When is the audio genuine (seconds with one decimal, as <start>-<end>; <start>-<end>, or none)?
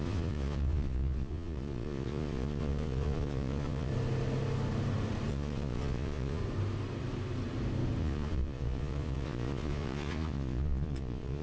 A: 3.9-5.3; 6.4-8.0